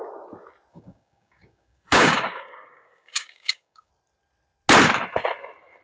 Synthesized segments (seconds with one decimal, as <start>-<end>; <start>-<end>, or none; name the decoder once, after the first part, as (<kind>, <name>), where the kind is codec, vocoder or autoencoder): 0.7-3.9 (codec, DAC)